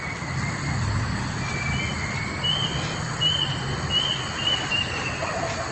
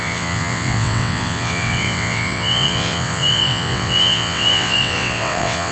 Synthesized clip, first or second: second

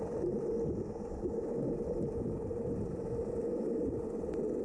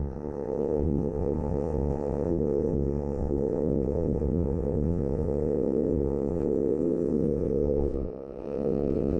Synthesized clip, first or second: second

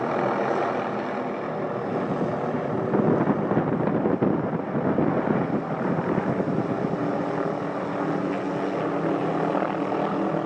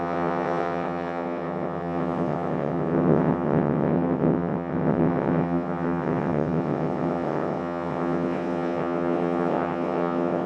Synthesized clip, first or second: second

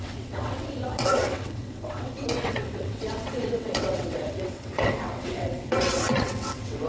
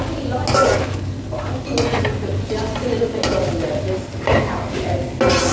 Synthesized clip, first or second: first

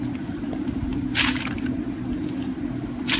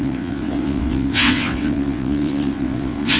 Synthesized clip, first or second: second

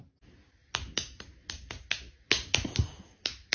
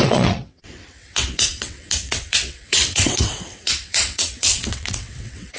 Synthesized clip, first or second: second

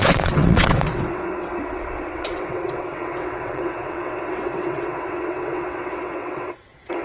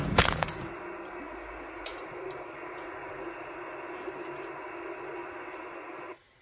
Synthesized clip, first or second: first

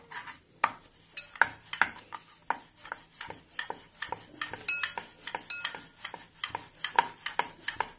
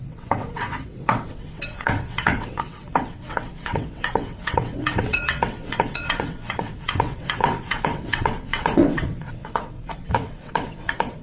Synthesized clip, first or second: second